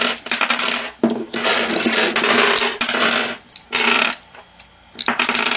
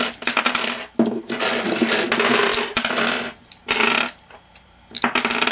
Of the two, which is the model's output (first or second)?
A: second